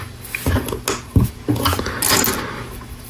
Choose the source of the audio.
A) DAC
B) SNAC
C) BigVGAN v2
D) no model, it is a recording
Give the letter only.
D